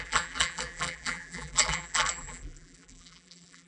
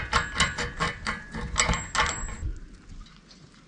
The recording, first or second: second